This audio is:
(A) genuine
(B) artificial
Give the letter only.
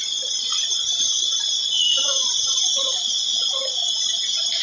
A